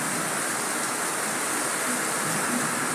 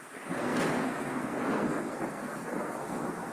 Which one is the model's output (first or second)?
second